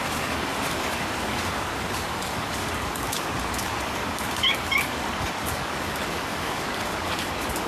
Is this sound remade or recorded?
remade